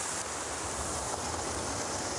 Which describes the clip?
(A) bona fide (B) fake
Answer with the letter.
A